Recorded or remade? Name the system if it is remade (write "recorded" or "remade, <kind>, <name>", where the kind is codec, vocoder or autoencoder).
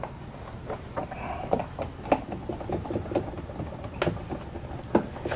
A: recorded